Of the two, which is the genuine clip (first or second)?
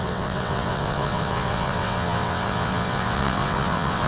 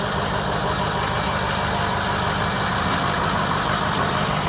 second